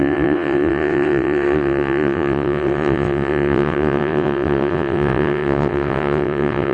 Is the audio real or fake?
fake